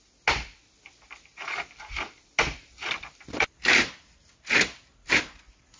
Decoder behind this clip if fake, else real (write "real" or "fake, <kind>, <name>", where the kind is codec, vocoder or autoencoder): real